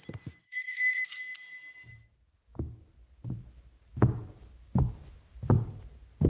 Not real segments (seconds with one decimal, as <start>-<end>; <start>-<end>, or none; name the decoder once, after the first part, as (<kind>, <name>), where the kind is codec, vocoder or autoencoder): 0.4-1.0 (autoencoder, DAC-VAE)